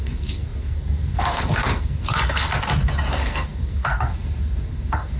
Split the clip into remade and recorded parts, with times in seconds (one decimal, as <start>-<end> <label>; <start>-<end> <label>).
0.0-2.5 remade; 2.5-3.1 recorded; 3.1-5.2 remade